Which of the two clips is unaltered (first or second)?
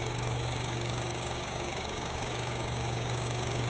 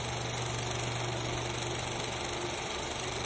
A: second